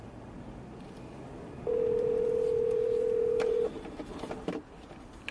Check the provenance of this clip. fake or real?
fake